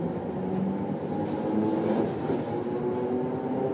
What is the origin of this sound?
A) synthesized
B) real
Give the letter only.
B